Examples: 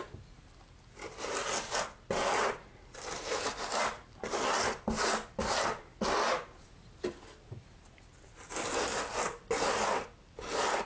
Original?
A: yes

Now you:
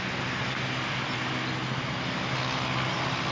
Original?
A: yes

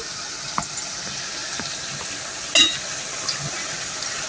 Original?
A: yes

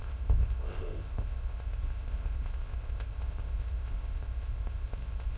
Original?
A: no